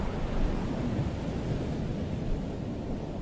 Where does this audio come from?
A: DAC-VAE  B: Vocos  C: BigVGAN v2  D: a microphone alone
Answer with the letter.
D